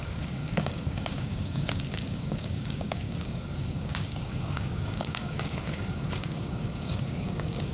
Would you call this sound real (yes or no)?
no